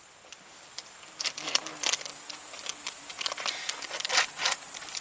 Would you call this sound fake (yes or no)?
no